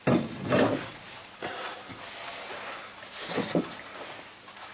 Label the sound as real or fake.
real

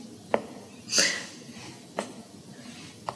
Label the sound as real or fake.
real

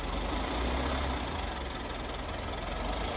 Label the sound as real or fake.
real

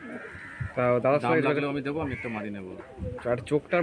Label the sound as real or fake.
real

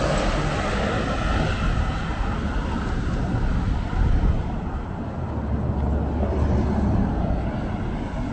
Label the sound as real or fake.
real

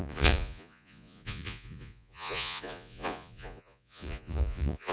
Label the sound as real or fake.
fake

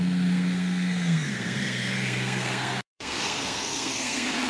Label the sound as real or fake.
fake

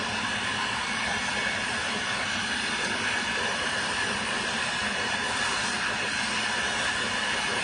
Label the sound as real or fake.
fake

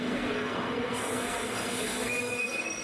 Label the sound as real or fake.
fake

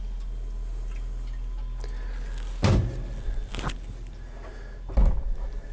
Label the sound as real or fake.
real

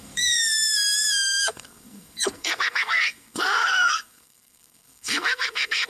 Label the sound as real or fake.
fake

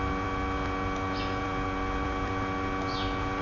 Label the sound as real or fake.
real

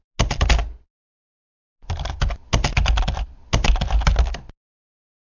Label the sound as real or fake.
real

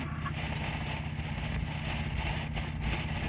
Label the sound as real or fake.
real